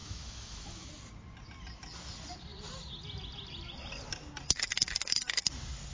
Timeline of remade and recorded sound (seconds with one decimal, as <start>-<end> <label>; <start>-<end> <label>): 0.0-0.9 remade; 0.9-5.9 recorded